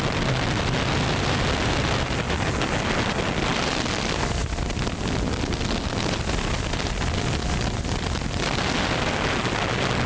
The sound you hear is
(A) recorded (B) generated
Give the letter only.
A